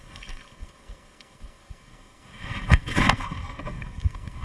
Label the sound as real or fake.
fake